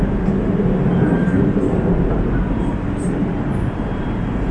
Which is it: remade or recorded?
remade